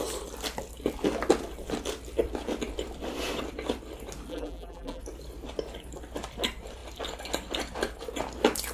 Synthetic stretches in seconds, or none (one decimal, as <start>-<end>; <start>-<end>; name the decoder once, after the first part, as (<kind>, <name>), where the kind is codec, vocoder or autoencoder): 4.3-5.0 (vocoder, BigVGAN v2)